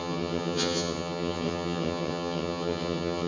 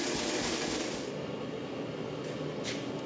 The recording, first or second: second